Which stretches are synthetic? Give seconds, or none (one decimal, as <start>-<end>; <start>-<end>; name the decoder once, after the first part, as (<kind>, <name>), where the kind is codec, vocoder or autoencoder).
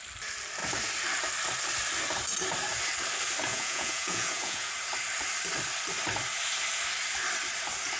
3.5-4.7 (vocoder, Vocos)